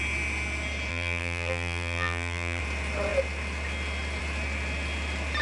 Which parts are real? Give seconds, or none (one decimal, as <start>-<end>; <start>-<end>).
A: 0.0-0.9; 2.6-5.4